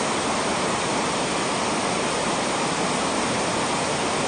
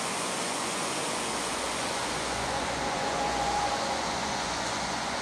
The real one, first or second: first